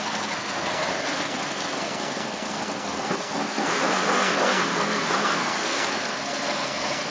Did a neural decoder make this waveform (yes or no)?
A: yes